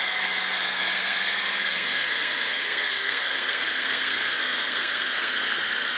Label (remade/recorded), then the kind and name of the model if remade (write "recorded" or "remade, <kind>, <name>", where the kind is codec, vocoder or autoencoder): remade, codec, SNAC